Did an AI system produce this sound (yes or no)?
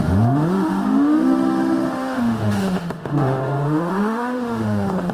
yes